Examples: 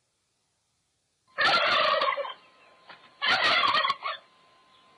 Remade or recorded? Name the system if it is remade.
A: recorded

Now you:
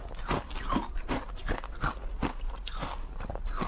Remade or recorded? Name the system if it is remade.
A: recorded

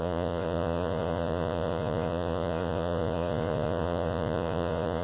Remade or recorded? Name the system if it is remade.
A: remade, vocoder, Vocos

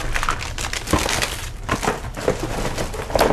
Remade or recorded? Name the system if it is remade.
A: recorded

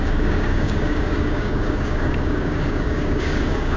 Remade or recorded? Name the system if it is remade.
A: remade, codec, DAC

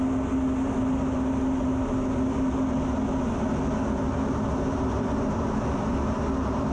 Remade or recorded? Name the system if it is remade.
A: recorded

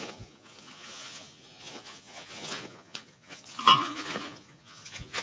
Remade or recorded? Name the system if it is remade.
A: remade, vocoder, Vocos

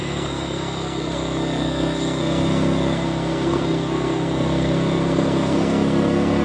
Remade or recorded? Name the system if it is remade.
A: remade, codec, SNAC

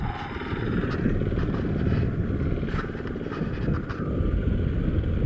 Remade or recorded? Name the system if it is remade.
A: recorded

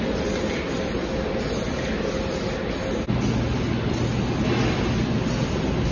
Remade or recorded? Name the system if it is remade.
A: recorded